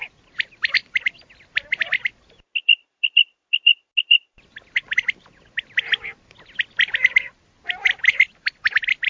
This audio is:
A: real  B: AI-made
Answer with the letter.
A